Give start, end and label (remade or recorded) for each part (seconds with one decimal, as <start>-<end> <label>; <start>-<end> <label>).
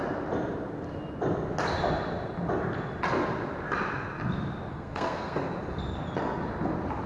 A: 0.0-4.7 recorded; 4.7-5.5 remade; 5.5-7.1 recorded